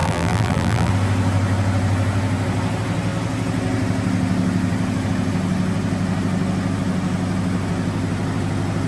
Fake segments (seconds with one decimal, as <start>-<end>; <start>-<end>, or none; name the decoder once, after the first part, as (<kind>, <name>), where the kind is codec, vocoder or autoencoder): 0.0-0.9 (vocoder, BigVGAN v2)